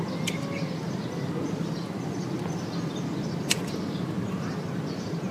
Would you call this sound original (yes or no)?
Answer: yes